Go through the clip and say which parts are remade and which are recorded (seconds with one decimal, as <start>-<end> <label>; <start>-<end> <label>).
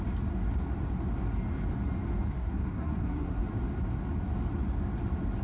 0.0-2.3 recorded; 2.3-3.4 remade; 3.4-5.4 recorded